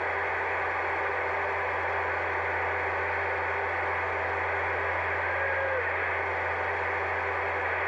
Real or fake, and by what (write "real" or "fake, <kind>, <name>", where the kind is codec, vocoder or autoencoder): real